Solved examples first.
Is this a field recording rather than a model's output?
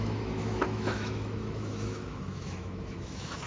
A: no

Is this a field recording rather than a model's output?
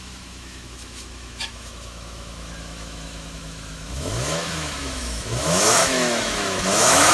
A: no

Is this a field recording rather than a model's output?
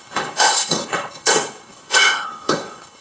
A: no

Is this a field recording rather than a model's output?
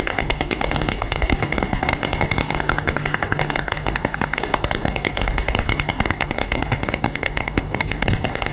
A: no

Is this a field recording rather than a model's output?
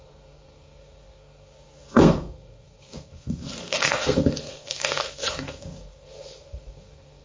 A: no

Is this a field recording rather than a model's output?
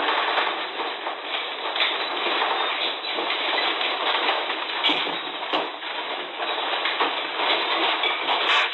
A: yes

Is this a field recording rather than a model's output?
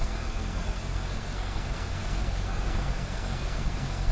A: no